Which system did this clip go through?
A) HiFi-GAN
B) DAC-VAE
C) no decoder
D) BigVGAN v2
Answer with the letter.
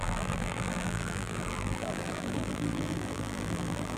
D